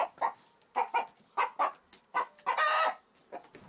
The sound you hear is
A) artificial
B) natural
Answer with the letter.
B